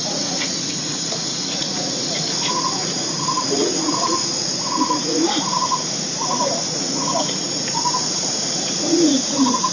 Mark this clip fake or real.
fake